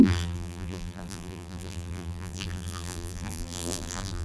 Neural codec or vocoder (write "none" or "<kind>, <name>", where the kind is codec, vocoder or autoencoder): vocoder, BigVGAN v2